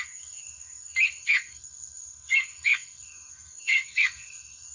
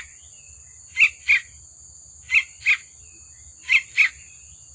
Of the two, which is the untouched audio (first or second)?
second